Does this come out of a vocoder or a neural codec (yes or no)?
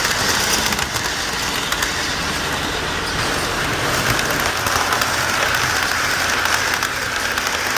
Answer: no